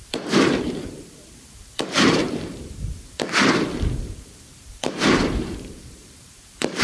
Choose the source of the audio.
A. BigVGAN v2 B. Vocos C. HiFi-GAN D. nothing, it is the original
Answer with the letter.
A